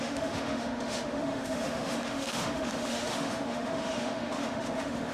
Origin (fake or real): fake